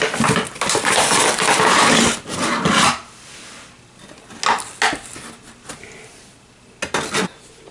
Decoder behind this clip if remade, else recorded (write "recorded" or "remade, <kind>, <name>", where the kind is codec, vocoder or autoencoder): recorded